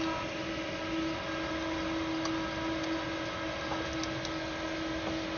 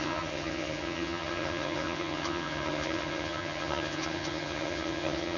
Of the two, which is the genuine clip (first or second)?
first